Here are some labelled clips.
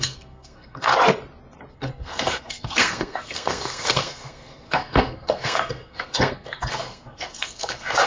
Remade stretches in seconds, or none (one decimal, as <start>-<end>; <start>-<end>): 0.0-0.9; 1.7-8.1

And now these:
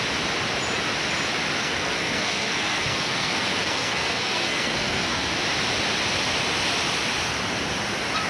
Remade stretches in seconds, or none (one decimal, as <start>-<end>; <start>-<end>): 1.6-5.3

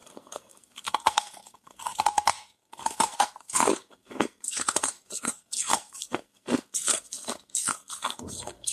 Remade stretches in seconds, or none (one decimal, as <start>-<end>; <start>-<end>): 0.0-8.7

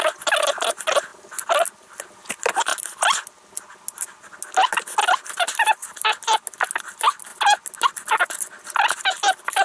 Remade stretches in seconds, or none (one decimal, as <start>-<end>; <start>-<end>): none